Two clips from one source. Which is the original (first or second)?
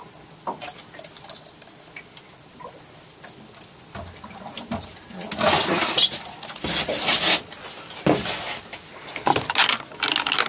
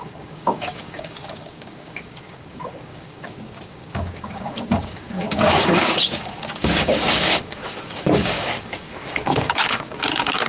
first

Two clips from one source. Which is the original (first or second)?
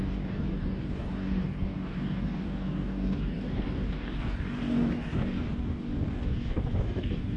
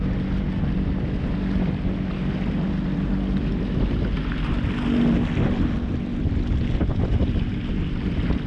second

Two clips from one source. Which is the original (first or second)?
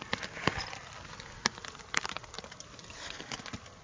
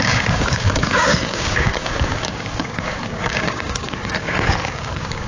first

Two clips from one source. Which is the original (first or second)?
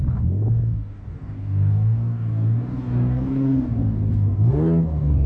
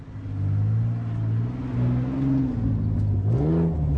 second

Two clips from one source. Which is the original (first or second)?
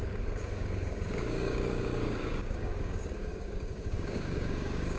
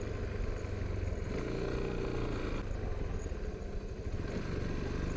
second